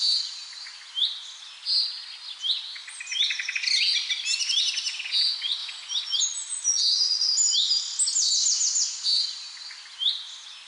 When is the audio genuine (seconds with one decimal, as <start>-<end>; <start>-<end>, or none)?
0.0-10.7